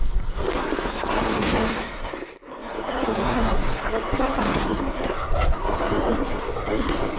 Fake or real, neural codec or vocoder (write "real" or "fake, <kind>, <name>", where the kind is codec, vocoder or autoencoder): fake, codec, SNAC